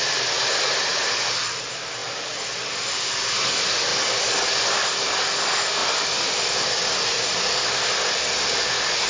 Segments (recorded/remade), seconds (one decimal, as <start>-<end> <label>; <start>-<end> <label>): 0.0-2.0 recorded; 2.0-3.1 remade; 3.1-5.8 recorded; 5.8-6.7 remade; 6.7-9.1 recorded